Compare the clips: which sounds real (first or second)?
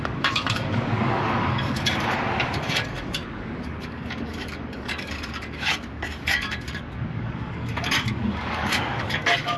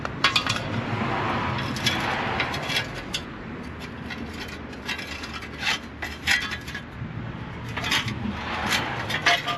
second